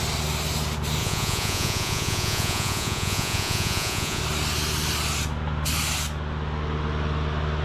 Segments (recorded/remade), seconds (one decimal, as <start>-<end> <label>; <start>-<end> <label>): 0.0-1.0 recorded; 1.0-4.2 remade; 4.2-7.6 recorded